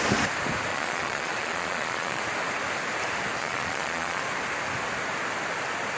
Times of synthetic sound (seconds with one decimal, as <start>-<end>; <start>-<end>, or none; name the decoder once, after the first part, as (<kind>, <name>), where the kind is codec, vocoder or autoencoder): 0.7-2.2 (vocoder, Vocos); 3.4-4.2